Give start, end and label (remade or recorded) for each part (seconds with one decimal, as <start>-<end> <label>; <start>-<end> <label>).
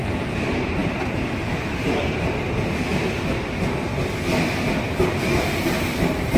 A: 0.0-0.8 recorded; 0.8-1.6 remade; 1.6-2.9 recorded; 2.9-3.4 remade; 3.4-6.4 recorded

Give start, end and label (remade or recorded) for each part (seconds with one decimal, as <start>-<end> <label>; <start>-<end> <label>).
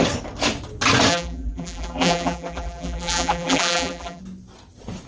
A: 0.0-1.1 recorded; 1.1-4.2 remade; 4.2-5.1 recorded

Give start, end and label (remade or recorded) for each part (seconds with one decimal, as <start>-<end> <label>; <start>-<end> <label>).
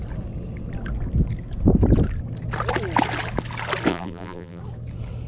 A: 0.0-3.9 recorded; 3.9-4.6 remade; 4.6-5.3 recorded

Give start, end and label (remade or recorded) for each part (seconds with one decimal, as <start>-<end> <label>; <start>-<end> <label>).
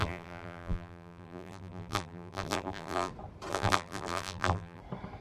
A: 0.0-3.1 remade; 3.1-3.5 recorded; 3.5-4.8 remade; 4.8-5.2 recorded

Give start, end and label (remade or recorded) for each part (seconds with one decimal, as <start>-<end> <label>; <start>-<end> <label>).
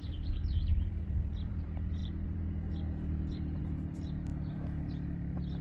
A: 0.0-5.6 remade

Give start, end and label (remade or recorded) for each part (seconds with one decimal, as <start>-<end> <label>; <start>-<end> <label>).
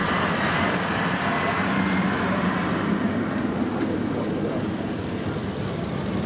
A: 0.0-3.8 remade; 3.8-6.3 recorded